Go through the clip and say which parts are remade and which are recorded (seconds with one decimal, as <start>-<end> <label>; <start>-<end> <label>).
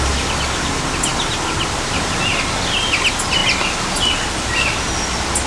0.0-5.5 recorded